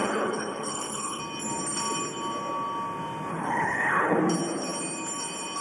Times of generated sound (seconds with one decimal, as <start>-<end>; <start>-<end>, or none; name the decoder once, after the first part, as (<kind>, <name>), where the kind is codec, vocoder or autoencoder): 0.0-1.2 (codec, HILCodec); 3.3-4.2